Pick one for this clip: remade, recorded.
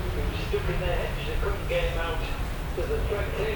recorded